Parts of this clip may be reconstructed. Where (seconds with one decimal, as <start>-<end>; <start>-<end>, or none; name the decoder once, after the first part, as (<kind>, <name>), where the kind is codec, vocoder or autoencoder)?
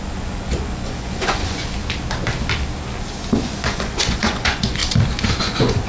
0.0-1.8 (vocoder, Vocos); 3.4-4.8; 5.4-5.9